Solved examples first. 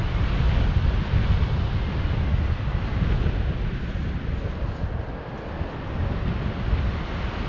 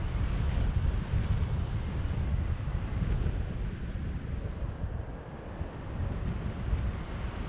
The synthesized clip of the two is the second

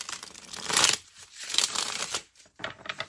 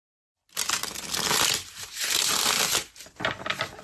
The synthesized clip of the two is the first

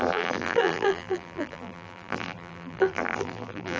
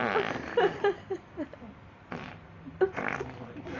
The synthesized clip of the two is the first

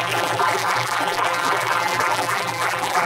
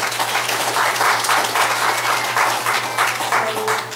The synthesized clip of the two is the first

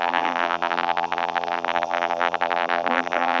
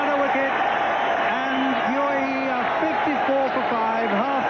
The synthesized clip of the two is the first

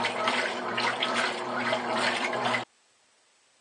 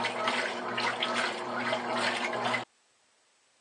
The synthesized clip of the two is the first